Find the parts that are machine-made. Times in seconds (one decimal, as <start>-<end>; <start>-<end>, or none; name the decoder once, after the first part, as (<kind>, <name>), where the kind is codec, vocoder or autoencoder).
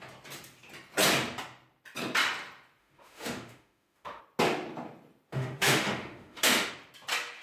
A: 2.8-4.2 (autoencoder, DAC-VAE); 5.3-6.7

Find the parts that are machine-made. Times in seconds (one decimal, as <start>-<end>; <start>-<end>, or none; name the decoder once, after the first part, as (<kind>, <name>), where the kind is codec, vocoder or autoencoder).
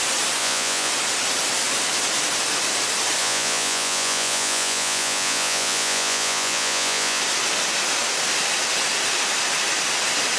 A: 0.4-0.9 (vocoder, Vocos); 3.2-7.2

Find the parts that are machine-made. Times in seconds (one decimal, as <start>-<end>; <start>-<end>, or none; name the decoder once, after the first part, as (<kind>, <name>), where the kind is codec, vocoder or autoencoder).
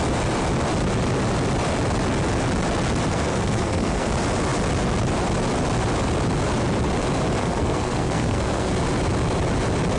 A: 3.1-4.1 (codec, SNAC); 7.4-8.7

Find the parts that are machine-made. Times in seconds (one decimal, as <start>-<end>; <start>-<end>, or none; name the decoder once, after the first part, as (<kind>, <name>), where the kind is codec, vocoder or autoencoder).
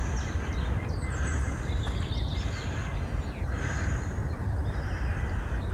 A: 3.4-5.7 (vocoder, BigVGAN v2)